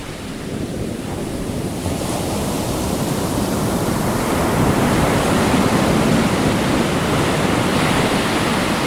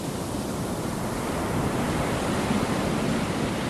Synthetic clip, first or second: first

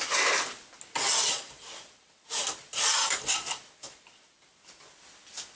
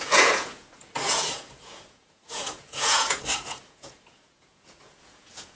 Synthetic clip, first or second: second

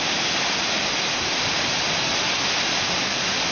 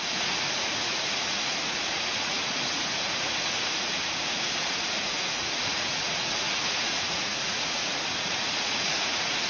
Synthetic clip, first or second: second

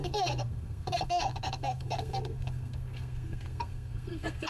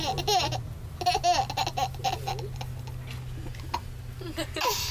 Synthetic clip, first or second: first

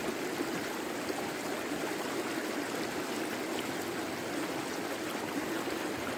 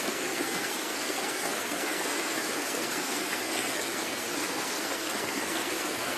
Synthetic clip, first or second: second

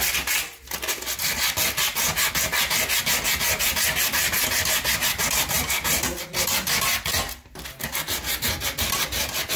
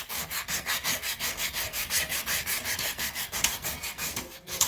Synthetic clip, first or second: second